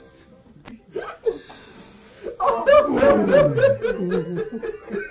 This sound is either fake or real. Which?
real